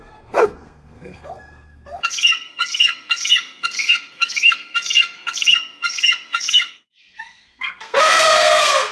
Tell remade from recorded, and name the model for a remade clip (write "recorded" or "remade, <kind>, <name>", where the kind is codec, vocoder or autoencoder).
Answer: remade, codec, SNAC